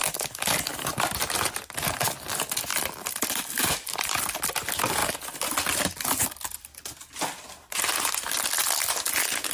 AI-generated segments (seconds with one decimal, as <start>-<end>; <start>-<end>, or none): 2.7-4.2; 8.6-9.5